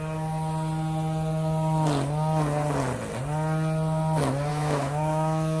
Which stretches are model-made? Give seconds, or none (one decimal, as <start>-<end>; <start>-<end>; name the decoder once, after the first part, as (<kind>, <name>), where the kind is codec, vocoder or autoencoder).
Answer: 4.5-5.6 (autoencoder, DAC-VAE)